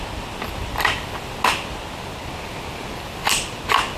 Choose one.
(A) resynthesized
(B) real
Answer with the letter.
B